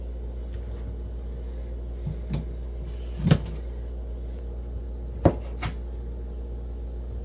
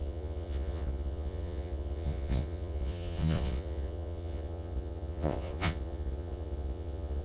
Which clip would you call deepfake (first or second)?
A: second